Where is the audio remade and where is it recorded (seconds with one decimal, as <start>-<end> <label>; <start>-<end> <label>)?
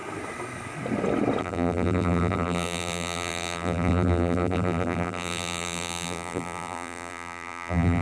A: 0.0-1.4 recorded; 1.4-8.0 remade